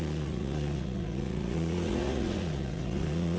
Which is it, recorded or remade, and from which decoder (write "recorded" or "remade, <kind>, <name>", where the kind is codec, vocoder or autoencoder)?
remade, vocoder, Vocos